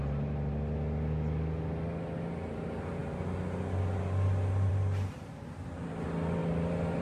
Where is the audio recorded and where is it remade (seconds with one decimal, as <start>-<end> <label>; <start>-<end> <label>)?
0.0-7.0 recorded